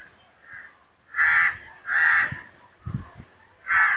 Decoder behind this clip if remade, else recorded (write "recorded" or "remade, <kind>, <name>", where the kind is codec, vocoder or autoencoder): recorded